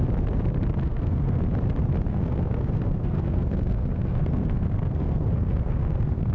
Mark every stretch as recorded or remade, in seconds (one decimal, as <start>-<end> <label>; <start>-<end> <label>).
0.0-0.8 recorded; 0.8-1.4 remade; 1.4-2.1 recorded; 2.1-6.3 remade